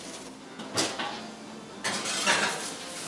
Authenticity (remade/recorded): recorded